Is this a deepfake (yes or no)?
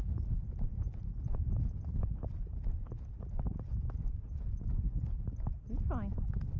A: no